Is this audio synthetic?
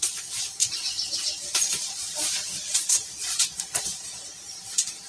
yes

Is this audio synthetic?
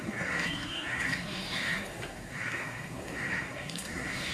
yes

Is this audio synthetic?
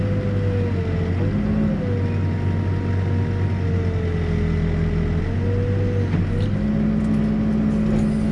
no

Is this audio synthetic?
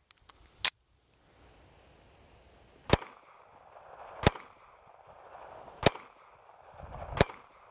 no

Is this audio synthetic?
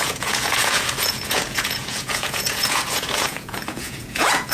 yes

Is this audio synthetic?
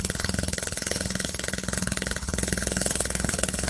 yes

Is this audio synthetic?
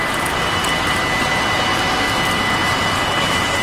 no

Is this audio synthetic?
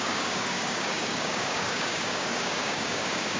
yes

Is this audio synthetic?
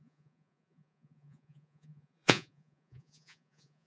yes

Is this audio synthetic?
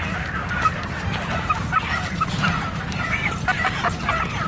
no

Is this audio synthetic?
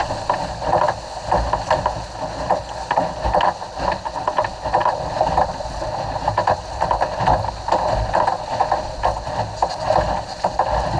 no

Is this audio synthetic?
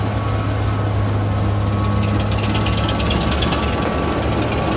no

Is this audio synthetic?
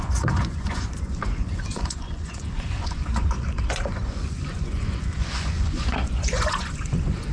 yes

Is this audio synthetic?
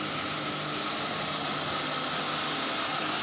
no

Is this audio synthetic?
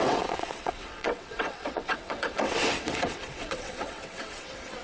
yes